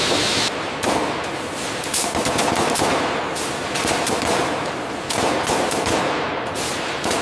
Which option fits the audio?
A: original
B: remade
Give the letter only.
B